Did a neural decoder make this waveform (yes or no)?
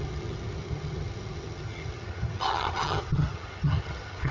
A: yes